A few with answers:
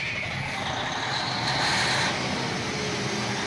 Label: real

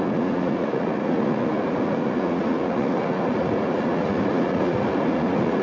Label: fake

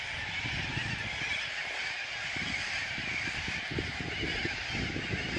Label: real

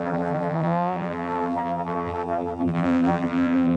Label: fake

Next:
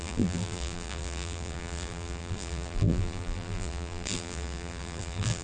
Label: fake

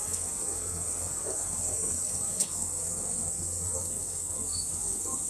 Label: fake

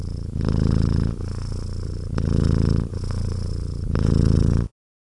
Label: real